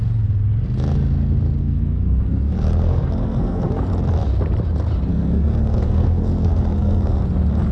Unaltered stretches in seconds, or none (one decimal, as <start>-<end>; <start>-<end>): 0.0-1.6; 3.8-5.1; 7.2-7.7